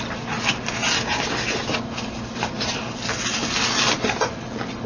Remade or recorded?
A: recorded